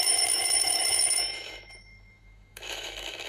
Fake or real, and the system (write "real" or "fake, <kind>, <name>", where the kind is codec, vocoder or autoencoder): fake, autoencoder, DAC-VAE